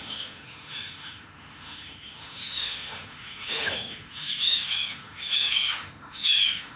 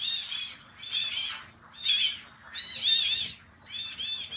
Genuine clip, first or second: second